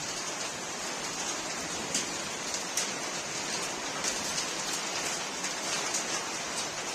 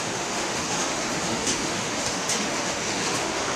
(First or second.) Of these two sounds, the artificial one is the second